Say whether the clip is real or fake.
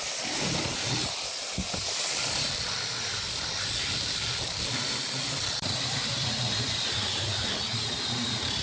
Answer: fake